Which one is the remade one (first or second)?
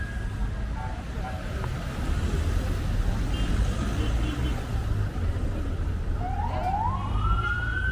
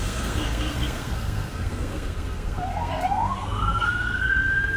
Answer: second